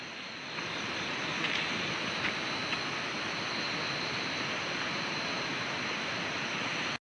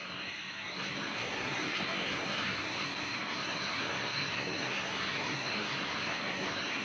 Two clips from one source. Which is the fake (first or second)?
second